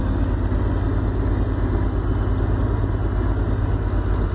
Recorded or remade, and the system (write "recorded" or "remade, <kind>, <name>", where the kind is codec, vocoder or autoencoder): recorded